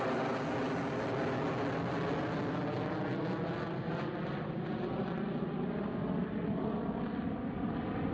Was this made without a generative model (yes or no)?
yes